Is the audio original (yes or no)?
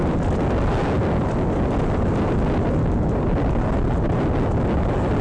yes